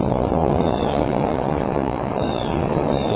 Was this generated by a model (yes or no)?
yes